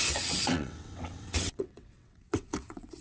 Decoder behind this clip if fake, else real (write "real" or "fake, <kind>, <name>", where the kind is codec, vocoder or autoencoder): fake, vocoder, WaveNeXt